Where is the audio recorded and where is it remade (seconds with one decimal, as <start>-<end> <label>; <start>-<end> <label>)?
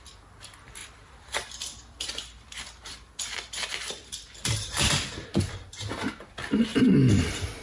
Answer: 0.0-7.6 remade